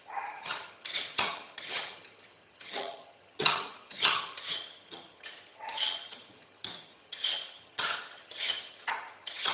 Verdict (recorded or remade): remade